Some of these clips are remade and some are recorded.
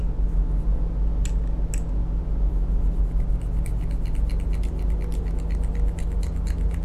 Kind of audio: recorded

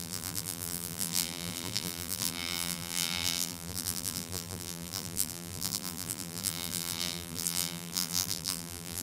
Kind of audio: remade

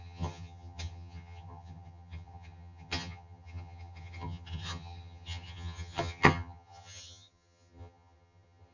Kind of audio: remade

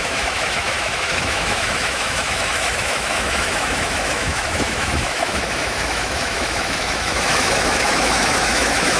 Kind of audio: remade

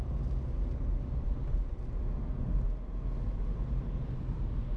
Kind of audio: recorded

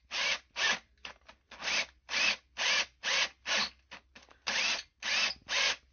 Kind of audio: recorded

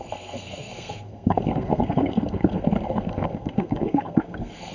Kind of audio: remade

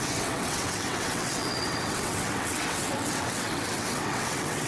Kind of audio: remade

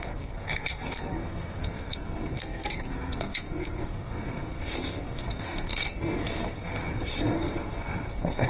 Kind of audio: remade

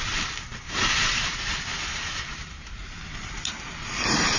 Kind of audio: remade